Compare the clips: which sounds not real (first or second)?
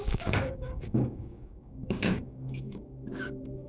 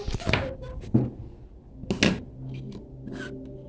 first